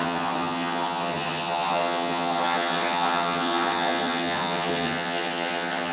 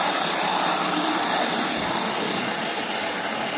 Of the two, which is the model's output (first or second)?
first